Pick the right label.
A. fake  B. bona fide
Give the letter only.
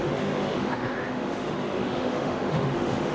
A